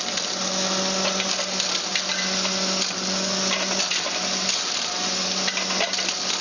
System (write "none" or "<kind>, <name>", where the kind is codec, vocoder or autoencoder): none